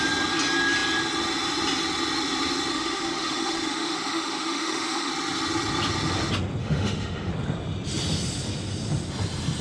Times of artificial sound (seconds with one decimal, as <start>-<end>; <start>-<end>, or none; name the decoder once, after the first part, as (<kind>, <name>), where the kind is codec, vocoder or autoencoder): 2.7-5.1 (autoencoder, DAC-VAE); 6.6-7.3